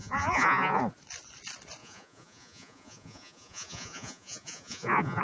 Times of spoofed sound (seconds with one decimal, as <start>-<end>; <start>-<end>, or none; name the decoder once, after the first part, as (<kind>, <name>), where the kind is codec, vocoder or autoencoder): 0.0-0.8 (vocoder, Vocos); 1.8-5.2